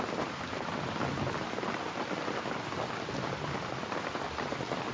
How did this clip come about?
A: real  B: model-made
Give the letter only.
A